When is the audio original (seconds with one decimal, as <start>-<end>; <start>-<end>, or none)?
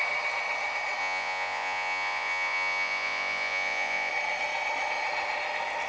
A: 0.0-1.0; 4.1-5.9